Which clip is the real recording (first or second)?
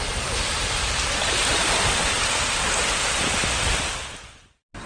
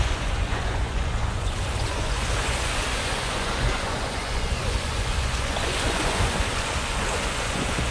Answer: first